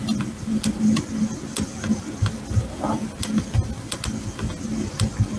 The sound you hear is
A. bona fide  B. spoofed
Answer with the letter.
A